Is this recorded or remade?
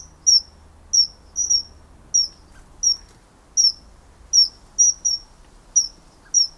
recorded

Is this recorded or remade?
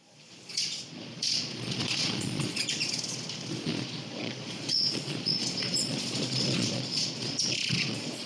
remade